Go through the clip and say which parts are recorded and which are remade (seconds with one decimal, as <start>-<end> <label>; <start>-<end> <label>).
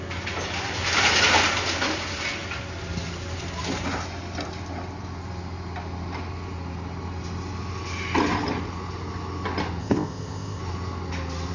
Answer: 0.0-9.8 recorded; 9.8-10.6 remade; 10.6-11.5 recorded